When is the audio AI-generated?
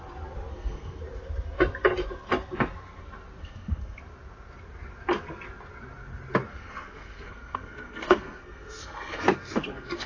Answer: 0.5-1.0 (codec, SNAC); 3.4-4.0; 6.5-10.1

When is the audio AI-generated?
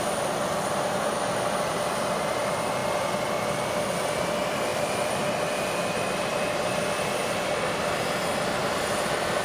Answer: 2.8-3.5 (vocoder, BigVGAN v2); 4.7-5.3; 6.3-6.8; 8.6-9.4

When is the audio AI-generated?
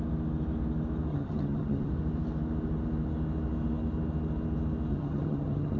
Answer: 1.1-1.9 (vocoder, HiFi-GAN); 4.9-5.8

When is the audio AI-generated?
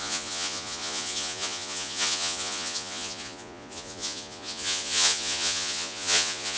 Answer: 0.0-6.6 (vocoder, Vocos)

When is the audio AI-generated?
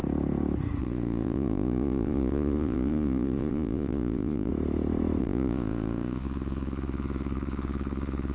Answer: 0.8-4.5 (vocoder, Vocos); 5.2-8.3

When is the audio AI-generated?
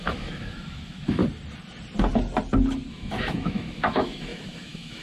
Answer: 0.0-1.2 (autoencoder, DAC-VAE); 2.9-5.0